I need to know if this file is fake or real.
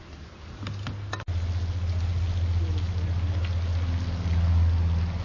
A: real